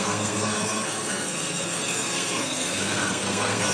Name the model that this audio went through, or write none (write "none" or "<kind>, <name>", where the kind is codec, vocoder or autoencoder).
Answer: codec, SNAC